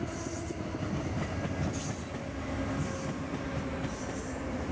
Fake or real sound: real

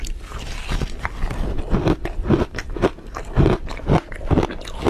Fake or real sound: real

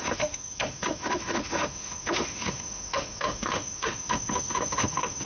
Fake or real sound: fake